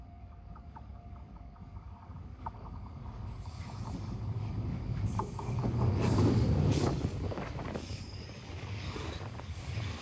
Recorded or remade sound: remade